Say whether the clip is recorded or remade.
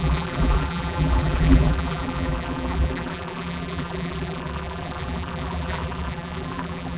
remade